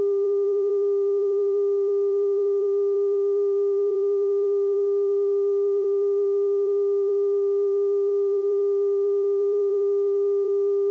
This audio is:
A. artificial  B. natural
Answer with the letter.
A